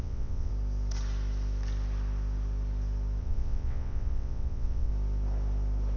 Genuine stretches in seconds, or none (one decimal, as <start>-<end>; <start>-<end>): 0.5-3.2; 4.9-6.0